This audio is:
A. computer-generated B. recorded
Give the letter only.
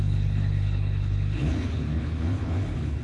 A